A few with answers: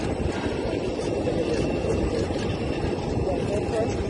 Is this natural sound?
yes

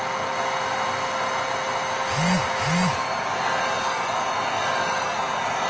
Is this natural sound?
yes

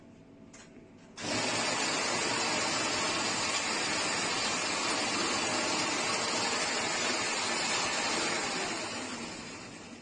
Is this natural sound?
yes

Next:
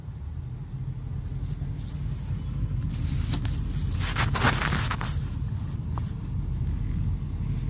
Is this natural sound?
yes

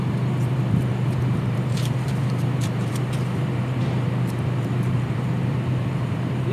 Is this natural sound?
no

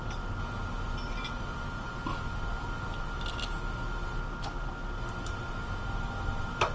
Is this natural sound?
yes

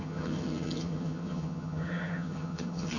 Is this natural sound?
no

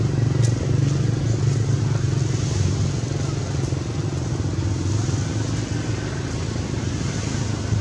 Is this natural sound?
yes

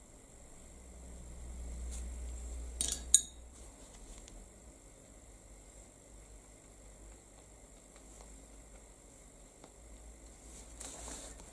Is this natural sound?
yes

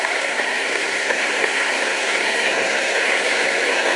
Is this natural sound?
no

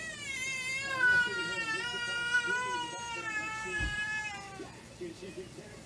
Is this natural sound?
no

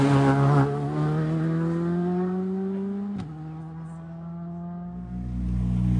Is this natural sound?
yes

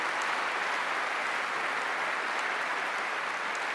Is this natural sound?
yes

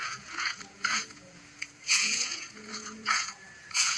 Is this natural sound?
no